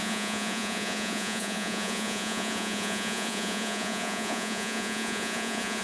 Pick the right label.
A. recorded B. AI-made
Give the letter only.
B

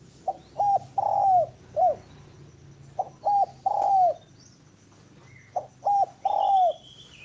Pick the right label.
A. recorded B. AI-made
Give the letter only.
A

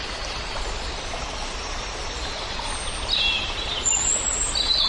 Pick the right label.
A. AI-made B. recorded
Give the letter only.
B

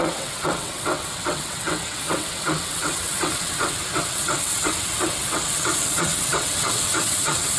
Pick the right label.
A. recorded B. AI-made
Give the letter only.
B